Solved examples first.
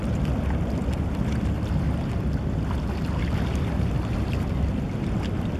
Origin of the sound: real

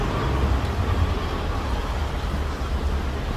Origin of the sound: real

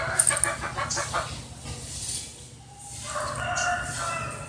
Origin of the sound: real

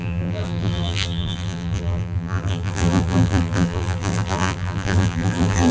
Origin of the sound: fake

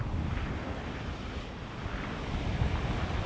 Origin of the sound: real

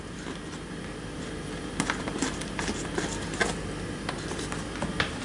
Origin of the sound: real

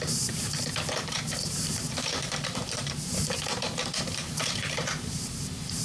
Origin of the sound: fake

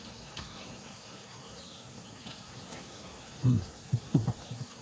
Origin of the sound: fake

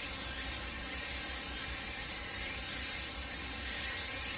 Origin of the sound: real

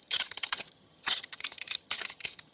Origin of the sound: fake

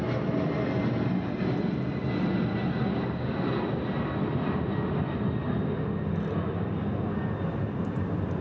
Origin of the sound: real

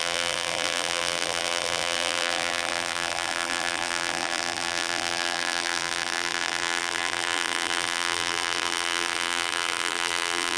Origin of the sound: fake